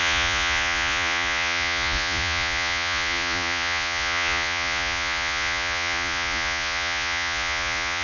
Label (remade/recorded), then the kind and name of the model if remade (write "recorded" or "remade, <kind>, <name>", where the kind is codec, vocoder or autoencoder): remade, vocoder, Vocos